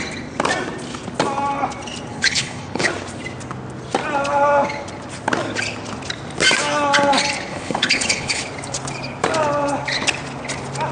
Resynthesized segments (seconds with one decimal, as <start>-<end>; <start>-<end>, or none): 2.1-2.9; 7.5-8.4